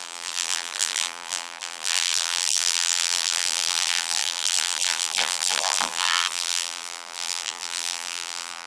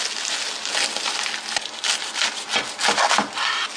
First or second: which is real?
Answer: second